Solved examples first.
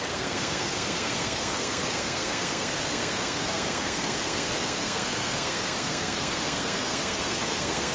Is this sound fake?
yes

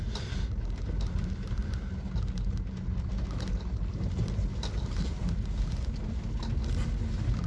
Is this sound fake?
no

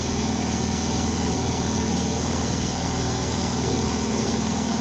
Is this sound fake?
yes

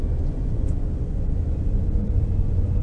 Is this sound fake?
yes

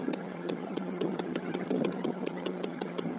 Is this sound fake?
yes